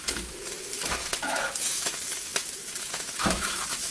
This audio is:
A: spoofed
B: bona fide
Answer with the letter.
A